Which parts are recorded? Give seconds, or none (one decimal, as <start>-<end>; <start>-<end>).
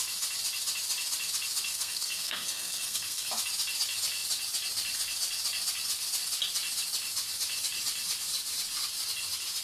0.0-1.7; 3.3-9.6